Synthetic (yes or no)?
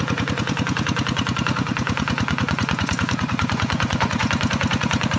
yes